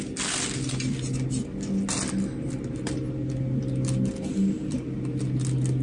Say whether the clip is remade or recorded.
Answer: recorded